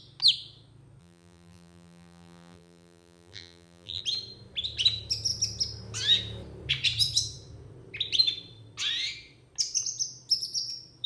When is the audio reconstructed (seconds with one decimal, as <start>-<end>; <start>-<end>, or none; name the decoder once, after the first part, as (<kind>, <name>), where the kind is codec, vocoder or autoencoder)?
1.0-4.0 (vocoder, BigVGAN v2)